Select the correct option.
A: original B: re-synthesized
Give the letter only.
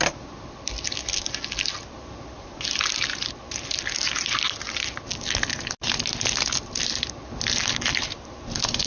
A